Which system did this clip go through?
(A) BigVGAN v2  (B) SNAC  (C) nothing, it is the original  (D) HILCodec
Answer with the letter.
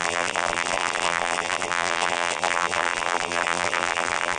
A